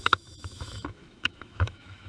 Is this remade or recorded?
remade